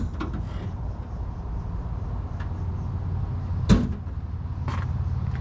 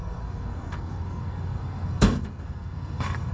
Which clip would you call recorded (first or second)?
first